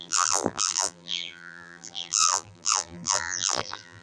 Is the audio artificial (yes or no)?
yes